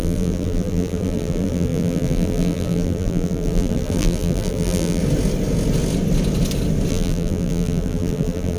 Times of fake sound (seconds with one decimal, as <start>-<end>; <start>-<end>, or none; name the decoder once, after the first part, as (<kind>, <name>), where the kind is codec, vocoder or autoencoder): 0.0-5.0 (vocoder, BigVGAN v2); 6.9-8.6